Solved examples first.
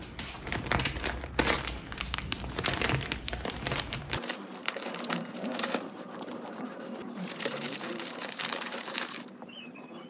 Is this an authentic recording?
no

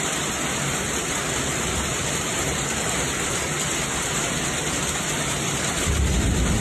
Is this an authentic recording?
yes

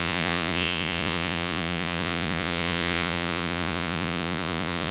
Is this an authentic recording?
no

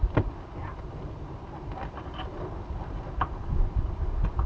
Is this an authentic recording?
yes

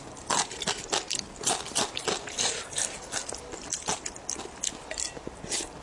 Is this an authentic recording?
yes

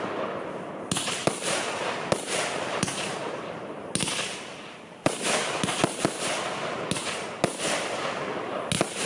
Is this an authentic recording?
yes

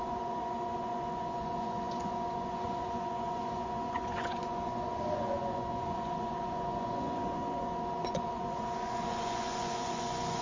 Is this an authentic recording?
no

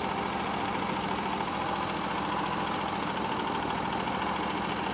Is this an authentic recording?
yes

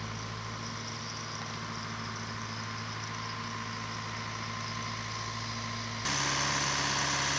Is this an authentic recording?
yes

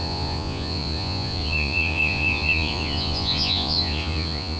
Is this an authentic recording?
no